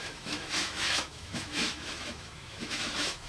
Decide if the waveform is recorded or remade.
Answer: remade